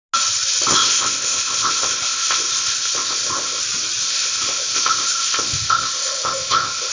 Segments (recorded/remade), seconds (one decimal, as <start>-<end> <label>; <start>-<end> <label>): 0.0-0.7 recorded; 0.7-3.6 remade; 3.6-4.0 recorded; 4.0-6.9 remade